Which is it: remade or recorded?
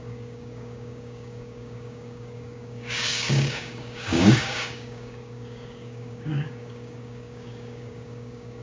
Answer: remade